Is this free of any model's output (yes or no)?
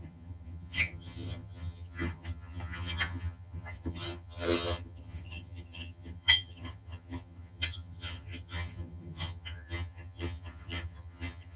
no